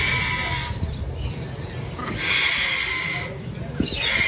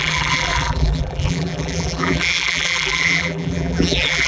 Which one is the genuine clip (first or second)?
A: first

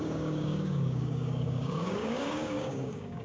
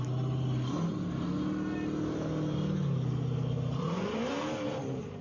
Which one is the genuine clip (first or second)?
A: second